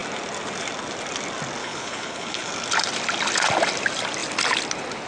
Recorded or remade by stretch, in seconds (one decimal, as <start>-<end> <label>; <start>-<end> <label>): 0.0-1.6 recorded; 1.6-2.5 remade; 2.5-5.1 recorded